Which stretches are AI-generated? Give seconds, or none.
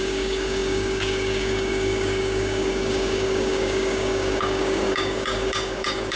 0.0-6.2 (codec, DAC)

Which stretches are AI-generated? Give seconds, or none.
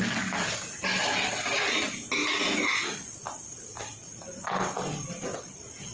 none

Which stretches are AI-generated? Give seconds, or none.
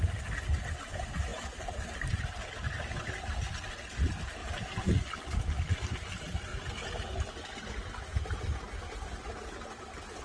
1.3-2.1 (vocoder, BigVGAN v2); 4.4-5.0; 6.5-7.3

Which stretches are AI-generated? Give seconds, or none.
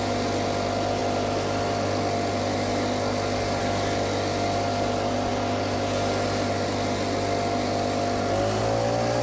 none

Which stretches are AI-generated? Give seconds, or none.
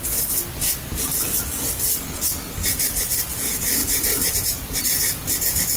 2.3-3.2 (vocoder, BigVGAN v2); 3.8-4.8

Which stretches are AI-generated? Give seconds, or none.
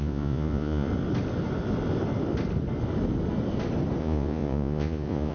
0.0-0.9 (vocoder, Vocos); 4.0-5.3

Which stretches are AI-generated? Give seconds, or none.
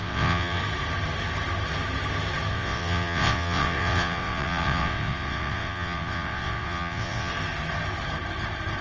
0.0-0.6 (vocoder, WaveNeXt); 2.5-7.3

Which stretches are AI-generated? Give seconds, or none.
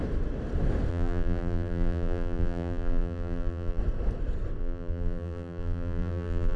0.9-3.8 (vocoder, BigVGAN v2); 4.6-6.6